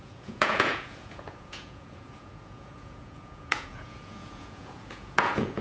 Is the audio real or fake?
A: fake